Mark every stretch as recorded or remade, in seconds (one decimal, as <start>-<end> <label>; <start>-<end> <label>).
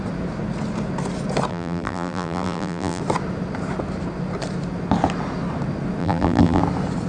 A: 0.0-1.5 recorded; 1.5-3.0 remade; 3.0-6.0 recorded; 6.0-6.6 remade; 6.6-7.1 recorded